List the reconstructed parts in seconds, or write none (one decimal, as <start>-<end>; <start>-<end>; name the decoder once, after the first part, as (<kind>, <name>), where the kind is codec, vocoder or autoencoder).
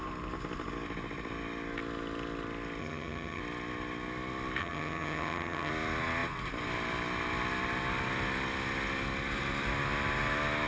2.8-3.4 (vocoder, HiFi-GAN); 4.6-5.7